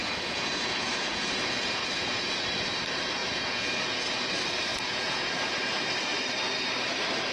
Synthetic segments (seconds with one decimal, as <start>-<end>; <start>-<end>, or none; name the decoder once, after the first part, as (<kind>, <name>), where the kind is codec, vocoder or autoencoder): 0.0-2.3 (vocoder, Vocos); 3.2-4.3; 4.7-5.3